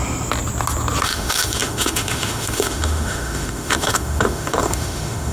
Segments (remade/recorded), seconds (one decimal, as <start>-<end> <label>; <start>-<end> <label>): 0.0-1.0 recorded; 1.0-5.3 remade